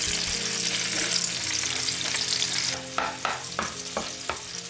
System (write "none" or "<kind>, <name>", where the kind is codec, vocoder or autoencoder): none